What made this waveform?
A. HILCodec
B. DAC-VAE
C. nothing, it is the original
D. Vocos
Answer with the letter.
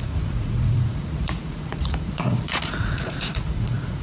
D